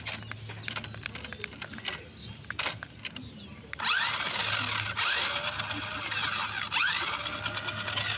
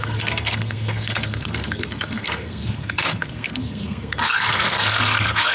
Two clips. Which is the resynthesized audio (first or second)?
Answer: second